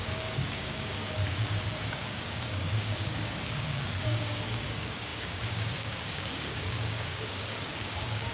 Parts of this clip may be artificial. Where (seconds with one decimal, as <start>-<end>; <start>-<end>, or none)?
0.0-8.3